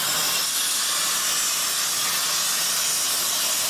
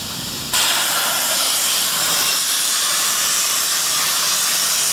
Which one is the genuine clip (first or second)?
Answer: first